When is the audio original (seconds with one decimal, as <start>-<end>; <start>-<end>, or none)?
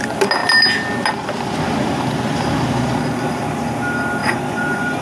0.0-4.2